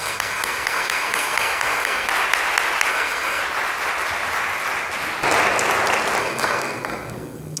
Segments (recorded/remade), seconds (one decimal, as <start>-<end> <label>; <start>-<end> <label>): 0.0-2.1 remade; 2.1-2.9 recorded; 2.9-3.4 remade; 3.4-6.2 recorded; 6.2-7.6 remade